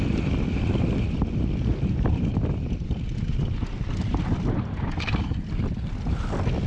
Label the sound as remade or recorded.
recorded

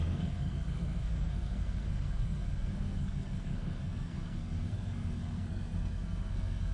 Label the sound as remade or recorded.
remade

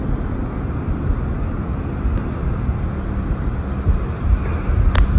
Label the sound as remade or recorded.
recorded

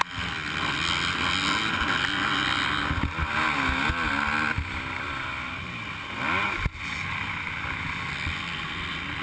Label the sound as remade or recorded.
recorded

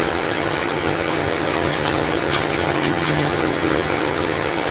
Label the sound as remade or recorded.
remade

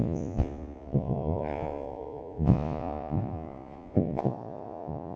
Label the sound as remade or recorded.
remade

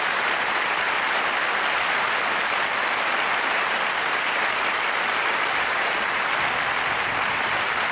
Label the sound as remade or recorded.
recorded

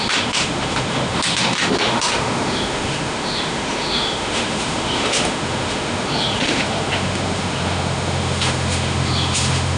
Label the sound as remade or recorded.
remade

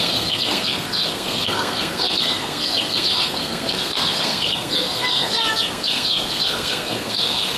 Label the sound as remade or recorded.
remade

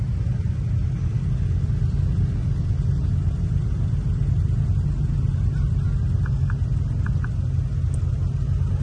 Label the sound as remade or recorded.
recorded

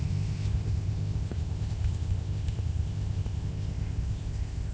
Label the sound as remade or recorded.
remade